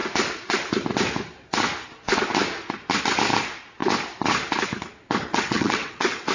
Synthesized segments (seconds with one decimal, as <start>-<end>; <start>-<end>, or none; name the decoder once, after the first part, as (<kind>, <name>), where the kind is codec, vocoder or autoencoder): 5.3-6.3 (vocoder, WaveNeXt)